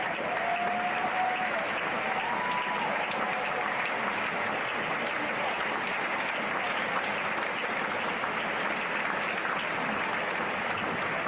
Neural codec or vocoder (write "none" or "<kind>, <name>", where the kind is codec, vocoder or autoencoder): none